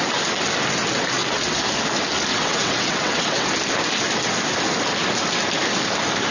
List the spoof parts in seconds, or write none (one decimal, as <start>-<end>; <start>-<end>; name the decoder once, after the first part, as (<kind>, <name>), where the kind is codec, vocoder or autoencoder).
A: 2.3-3.5 (vocoder, WaveNeXt)

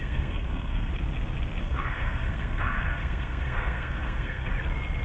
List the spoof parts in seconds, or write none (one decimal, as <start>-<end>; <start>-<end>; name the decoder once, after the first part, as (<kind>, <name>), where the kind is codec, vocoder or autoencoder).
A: 0.0-0.9 (codec, SNAC); 1.6-4.5

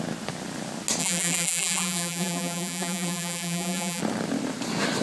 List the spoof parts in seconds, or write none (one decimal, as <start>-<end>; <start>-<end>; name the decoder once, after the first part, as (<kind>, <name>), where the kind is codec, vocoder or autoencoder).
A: 1.0-4.0 (vocoder, BigVGAN v2)

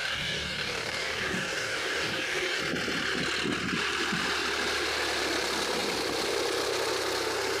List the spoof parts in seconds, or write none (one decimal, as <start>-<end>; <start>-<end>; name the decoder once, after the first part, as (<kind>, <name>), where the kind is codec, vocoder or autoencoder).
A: 0.0-2.6 (codec, DAC)

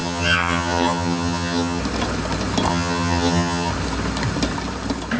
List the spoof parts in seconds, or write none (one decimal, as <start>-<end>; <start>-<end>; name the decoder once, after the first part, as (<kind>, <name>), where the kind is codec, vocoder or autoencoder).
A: 0.0-1.8 (vocoder, HiFi-GAN); 2.7-3.7

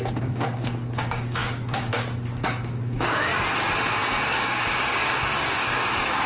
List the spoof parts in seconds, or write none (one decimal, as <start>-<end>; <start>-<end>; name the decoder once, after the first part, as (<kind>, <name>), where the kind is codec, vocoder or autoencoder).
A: 0.0-3.3 (codec, DAC); 4.3-6.3